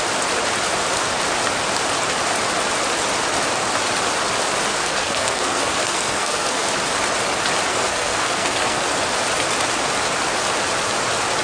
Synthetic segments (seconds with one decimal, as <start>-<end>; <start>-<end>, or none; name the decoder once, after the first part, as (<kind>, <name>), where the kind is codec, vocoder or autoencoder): 4.7-6.7 (codec, SNAC); 7.7-8.8